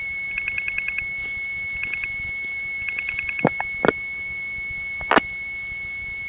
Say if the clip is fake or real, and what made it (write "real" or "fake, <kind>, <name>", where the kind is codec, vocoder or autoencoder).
real